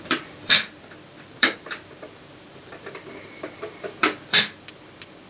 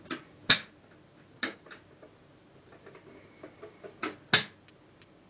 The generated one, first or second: first